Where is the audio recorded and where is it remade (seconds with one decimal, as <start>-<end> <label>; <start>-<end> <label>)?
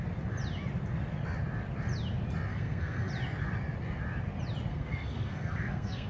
0.0-2.5 recorded; 2.5-3.1 remade; 3.1-4.7 recorded; 4.7-6.1 remade